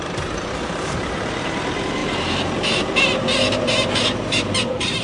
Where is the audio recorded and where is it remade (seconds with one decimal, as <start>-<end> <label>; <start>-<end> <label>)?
0.0-5.0 remade